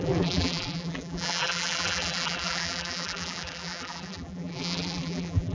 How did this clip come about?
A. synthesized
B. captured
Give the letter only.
A